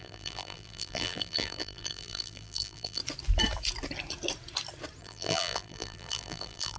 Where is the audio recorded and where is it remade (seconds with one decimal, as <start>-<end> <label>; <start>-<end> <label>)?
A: 0.0-3.0 remade; 3.0-5.0 recorded; 5.0-6.8 remade